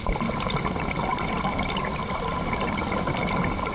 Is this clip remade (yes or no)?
no